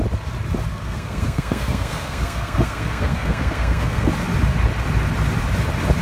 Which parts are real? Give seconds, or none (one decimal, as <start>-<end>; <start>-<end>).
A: 0.0-0.7; 4.1-6.0